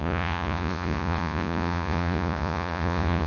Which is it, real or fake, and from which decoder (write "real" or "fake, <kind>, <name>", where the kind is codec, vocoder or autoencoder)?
fake, vocoder, Vocos